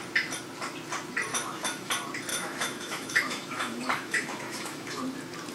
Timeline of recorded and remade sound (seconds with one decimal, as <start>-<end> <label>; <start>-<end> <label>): 0.0-1.3 recorded; 1.3-1.9 remade; 1.9-2.3 recorded; 2.3-5.0 remade; 5.0-5.5 recorded